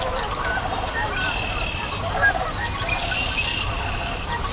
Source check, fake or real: real